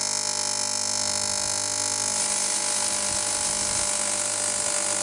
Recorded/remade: recorded